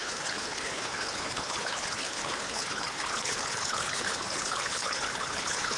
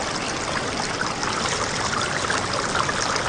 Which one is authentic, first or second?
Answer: second